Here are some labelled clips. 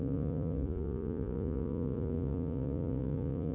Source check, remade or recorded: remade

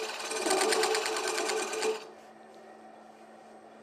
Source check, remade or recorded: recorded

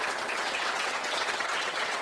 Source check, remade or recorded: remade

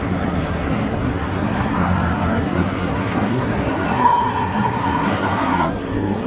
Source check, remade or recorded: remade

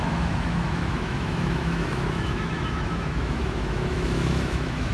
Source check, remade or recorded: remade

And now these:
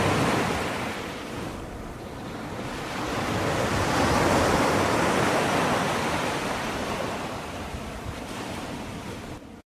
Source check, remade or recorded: recorded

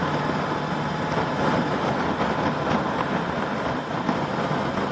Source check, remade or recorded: recorded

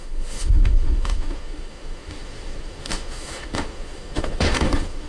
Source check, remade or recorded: remade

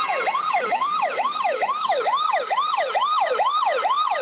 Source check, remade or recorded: recorded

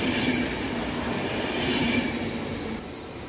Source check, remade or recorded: recorded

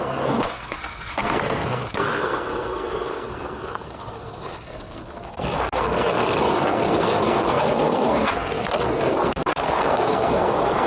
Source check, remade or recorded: remade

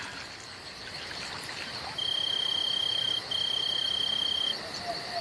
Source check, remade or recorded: recorded